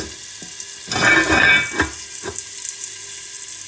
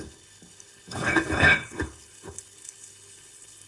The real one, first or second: first